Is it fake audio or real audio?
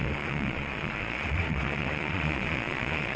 fake